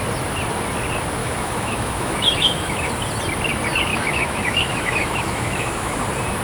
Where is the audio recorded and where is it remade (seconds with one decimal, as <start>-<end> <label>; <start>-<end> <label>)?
0.0-1.2 recorded; 1.2-2.9 remade; 2.9-3.9 recorded; 3.9-6.0 remade; 6.0-6.4 recorded